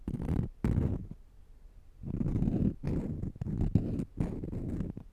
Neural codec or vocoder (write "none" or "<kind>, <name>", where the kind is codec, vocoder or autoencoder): none